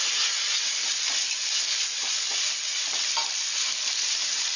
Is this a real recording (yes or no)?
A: yes